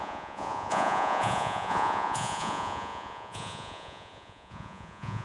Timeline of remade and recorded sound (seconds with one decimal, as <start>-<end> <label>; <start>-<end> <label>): 0.0-5.2 remade